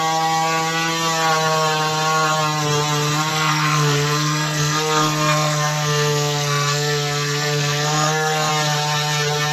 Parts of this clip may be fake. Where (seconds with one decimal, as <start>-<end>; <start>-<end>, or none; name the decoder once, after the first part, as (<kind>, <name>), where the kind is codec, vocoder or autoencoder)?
3.3-8.5 (codec, SNAC)